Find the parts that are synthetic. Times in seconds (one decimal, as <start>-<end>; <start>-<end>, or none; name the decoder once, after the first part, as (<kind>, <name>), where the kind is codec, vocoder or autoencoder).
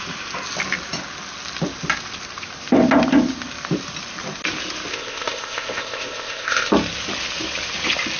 4.9-6.7 (codec, ZipCodec)